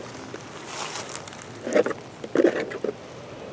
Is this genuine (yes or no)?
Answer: yes